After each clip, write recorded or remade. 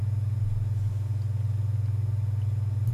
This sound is recorded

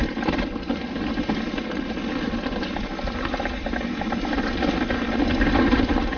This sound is recorded